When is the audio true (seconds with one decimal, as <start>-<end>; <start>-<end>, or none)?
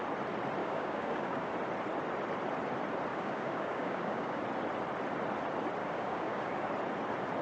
0.0-0.6; 1.5-3.1; 4.4-5.8; 6.7-7.4